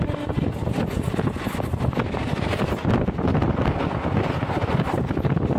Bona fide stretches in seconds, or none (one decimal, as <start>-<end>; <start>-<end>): 0.0-5.6